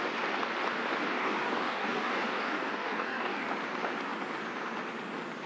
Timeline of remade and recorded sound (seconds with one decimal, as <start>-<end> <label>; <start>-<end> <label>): 0.0-1.2 recorded; 1.2-3.4 remade; 3.4-5.5 recorded